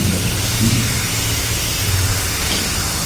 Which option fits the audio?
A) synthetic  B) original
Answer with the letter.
B